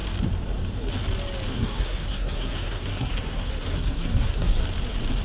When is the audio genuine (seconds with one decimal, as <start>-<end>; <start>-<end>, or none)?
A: 0.0-1.5; 4.6-5.2